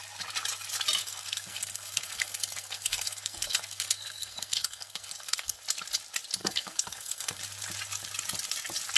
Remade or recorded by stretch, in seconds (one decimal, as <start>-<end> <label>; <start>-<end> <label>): 0.0-1.0 recorded; 1.0-5.6 remade; 5.6-6.4 recorded; 6.4-7.4 remade; 7.4-9.0 recorded